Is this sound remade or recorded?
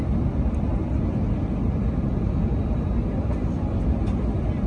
recorded